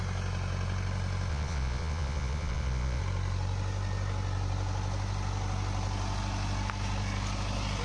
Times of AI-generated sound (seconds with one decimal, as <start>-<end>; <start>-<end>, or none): 1.3-3.0